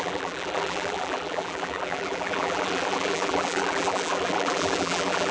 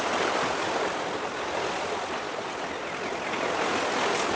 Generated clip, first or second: first